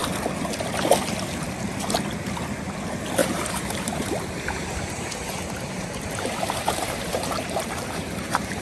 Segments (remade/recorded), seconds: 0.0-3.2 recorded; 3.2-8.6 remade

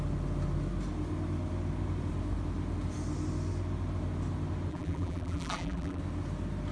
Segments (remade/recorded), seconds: 0.0-4.7 recorded; 4.7-6.0 remade; 6.0-6.7 recorded

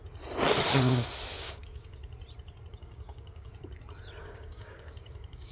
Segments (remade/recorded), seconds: 0.0-1.4 recorded; 1.4-2.0 remade; 2.0-2.7 recorded; 2.7-3.5 remade; 3.5-4.2 recorded; 4.2-5.5 remade

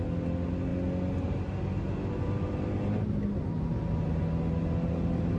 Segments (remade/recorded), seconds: 0.0-5.4 recorded